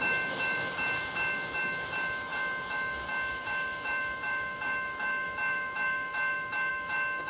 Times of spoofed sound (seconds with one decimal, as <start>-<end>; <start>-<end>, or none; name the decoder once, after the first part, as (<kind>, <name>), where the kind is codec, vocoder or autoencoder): 0.0-7.3 (autoencoder, DAC-VAE)